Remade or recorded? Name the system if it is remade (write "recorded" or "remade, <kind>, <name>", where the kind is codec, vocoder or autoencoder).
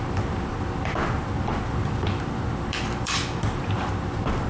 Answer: remade, vocoder, BigVGAN v2